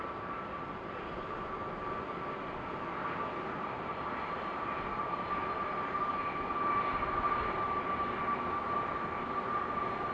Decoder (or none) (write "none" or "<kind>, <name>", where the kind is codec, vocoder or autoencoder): none